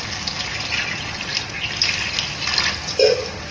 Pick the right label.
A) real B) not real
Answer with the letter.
A